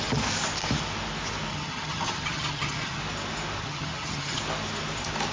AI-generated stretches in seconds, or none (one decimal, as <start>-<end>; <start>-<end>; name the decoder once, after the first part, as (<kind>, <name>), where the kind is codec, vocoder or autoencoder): 1.5-3.0 (vocoder, HiFi-GAN); 3.6-4.4